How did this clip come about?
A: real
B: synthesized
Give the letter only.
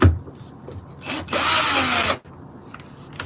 A